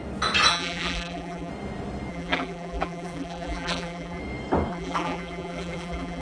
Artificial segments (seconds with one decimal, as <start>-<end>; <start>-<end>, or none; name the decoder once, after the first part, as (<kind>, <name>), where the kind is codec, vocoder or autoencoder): 0.5-1.5 (vocoder, BigVGAN v2); 2.1-4.2; 4.7-6.2